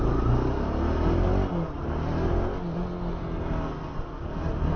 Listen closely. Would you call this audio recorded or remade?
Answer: recorded